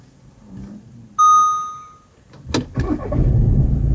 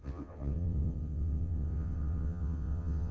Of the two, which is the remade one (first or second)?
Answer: second